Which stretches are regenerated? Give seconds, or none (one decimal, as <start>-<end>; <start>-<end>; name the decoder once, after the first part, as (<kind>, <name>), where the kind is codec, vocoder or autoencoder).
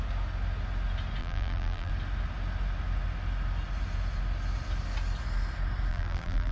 1.2-1.9 (vocoder, BigVGAN v2); 5.9-6.5